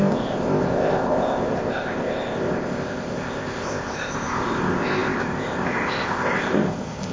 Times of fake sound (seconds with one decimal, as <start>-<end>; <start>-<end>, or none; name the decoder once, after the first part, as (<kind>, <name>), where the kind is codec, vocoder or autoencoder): 0.0-7.1 (codec, ZipCodec)